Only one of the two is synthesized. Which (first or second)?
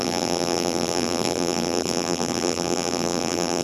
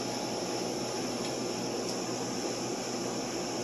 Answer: first